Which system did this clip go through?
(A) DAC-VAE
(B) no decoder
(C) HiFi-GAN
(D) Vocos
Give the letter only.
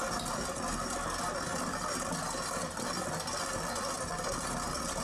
B